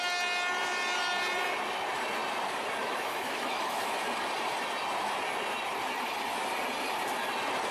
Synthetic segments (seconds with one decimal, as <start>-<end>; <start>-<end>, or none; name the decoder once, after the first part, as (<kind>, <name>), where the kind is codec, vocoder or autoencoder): 2.8-3.9 (autoencoder, DAC-VAE)